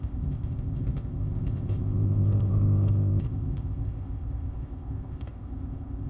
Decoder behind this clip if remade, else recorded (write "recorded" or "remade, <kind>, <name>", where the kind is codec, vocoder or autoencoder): remade, codec, ZipCodec